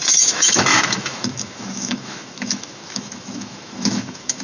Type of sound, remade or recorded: remade